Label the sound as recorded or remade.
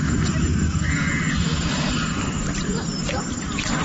recorded